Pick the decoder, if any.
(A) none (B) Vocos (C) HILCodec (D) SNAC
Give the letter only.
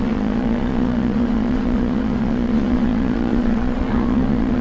B